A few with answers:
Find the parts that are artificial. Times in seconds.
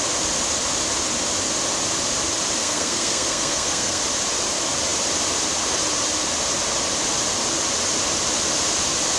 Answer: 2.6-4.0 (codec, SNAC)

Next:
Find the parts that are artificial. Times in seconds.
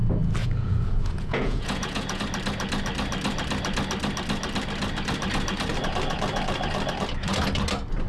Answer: 0.4-2.2 (vocoder, Vocos)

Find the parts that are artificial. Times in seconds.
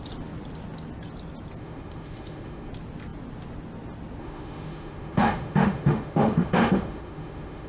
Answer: 1.6-2.7 (autoencoder, DAC-VAE); 4.2-7.7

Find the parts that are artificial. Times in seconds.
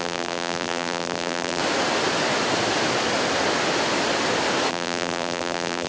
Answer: 0.0-1.6 (vocoder, BigVGAN v2); 4.7-5.9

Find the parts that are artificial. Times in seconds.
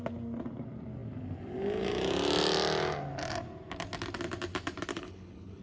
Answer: 4.9-5.6 (codec, HILCodec)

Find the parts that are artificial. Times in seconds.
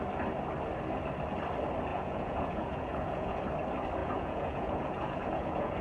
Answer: 1.9-3.4 (vocoder, Vocos); 4.0-5.8